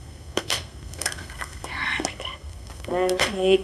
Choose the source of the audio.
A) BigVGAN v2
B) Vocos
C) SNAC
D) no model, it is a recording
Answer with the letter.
C